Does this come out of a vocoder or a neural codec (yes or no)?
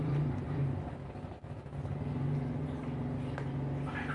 no